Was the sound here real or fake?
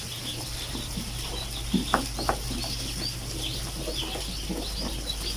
real